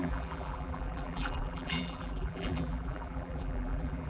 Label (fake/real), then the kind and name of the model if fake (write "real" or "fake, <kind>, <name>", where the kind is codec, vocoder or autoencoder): fake, vocoder, BigVGAN v2